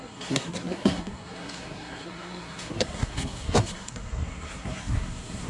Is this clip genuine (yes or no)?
no